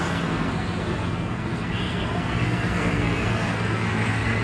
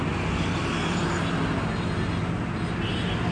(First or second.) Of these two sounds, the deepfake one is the first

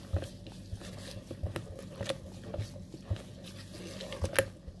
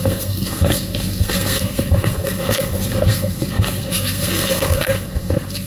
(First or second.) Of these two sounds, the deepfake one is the second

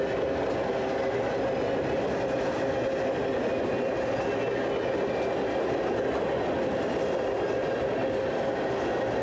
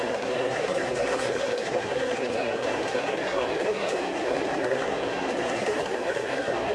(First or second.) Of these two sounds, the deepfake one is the second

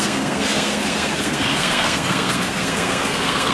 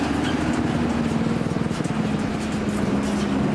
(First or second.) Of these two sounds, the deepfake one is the first